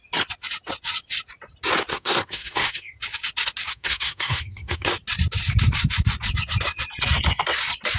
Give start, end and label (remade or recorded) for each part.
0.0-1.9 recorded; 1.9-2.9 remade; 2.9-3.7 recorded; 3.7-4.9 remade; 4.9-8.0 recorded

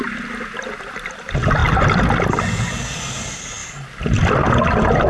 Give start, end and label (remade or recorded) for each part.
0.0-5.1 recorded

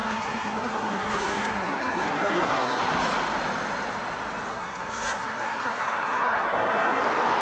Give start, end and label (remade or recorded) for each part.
0.0-2.8 remade; 2.8-4.5 recorded; 4.5-7.0 remade; 7.0-7.4 recorded

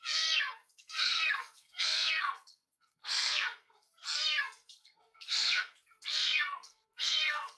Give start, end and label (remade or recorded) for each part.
0.0-7.6 remade